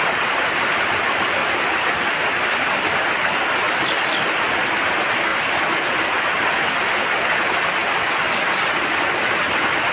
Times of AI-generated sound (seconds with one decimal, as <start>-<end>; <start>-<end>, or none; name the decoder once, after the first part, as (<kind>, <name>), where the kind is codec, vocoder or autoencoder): none